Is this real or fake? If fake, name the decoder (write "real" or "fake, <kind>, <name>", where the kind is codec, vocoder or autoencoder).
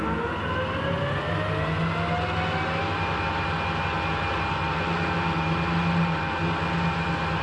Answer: real